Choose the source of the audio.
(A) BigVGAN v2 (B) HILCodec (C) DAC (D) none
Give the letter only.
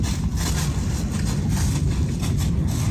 D